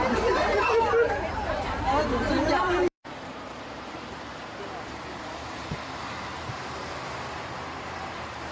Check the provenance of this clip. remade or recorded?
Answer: remade